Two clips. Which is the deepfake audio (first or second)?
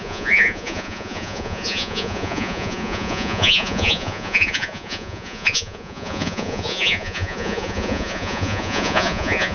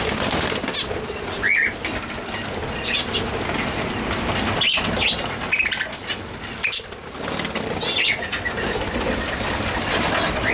first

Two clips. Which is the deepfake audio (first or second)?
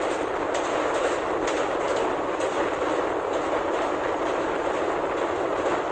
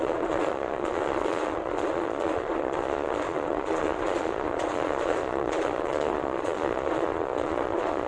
second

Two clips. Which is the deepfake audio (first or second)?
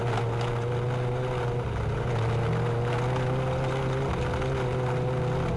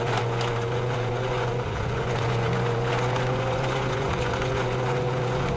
second